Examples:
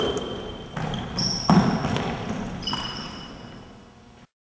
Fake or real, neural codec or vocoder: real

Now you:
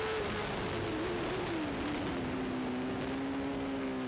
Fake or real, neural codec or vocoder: real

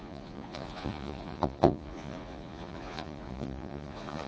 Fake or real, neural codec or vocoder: fake, vocoder, Vocos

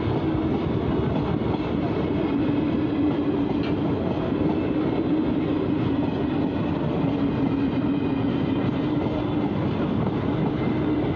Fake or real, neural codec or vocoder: real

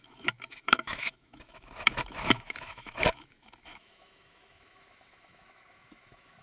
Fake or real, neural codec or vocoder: fake, autoencoder, DAC-VAE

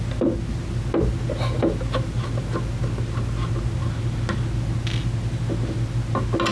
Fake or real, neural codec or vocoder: real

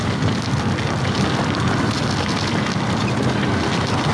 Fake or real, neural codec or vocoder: real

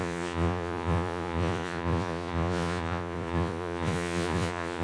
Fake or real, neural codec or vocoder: fake, vocoder, Vocos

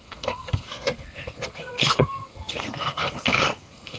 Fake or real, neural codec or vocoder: fake, codec, SNAC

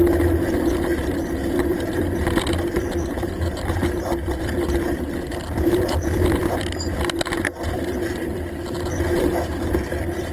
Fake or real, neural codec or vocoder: fake, vocoder, BigVGAN v2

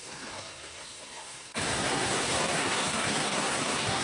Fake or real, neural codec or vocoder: fake, codec, SNAC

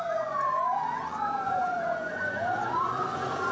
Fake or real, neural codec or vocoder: fake, vocoder, Vocos